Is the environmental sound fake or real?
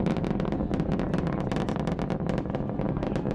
real